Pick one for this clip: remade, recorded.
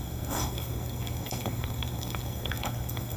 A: remade